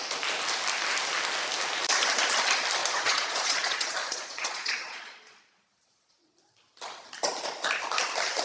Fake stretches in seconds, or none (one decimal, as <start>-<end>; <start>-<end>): 2.8-6.4